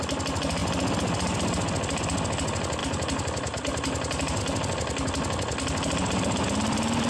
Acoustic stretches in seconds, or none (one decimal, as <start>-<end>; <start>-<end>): 0.0-2.8; 4.4-7.1